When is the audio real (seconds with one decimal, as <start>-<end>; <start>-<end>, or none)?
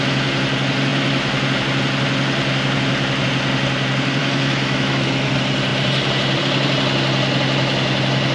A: 0.0-4.2; 5.3-8.3